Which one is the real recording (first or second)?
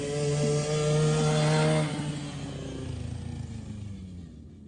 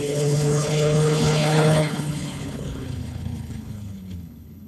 first